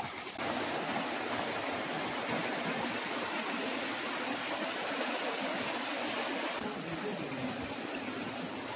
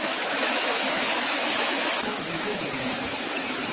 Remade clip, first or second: second